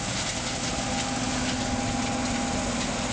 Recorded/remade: recorded